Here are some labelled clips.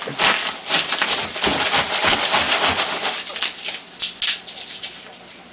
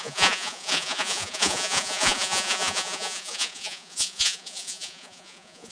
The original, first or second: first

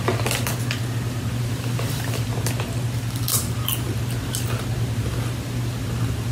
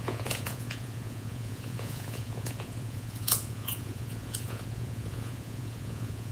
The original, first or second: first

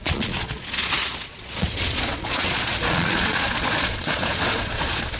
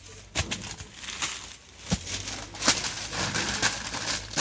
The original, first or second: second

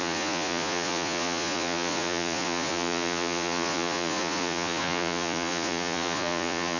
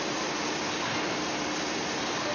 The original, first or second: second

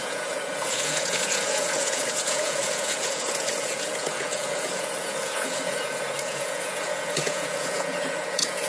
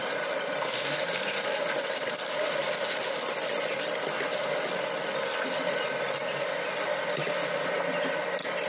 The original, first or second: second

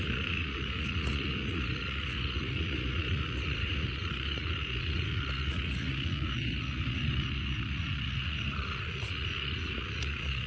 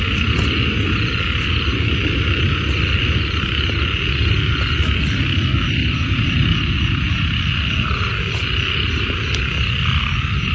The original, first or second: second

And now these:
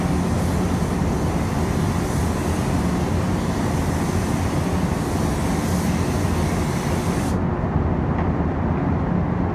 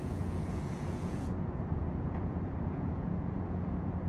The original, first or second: first